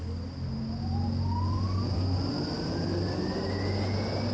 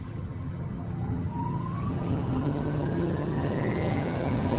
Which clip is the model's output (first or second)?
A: second